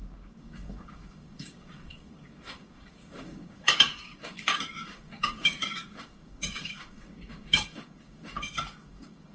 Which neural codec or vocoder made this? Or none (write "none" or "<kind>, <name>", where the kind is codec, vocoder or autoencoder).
codec, DAC